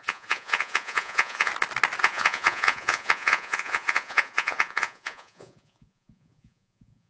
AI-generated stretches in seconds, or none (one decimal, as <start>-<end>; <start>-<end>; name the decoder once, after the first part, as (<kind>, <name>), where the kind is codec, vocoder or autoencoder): 0.0-1.5 (vocoder, Vocos); 2.0-7.1